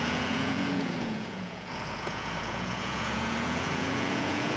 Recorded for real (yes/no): no